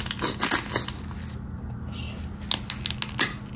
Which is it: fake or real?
real